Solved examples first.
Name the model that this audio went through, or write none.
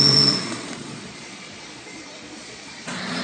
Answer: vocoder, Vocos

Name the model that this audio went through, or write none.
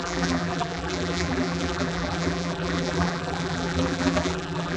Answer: vocoder, BigVGAN v2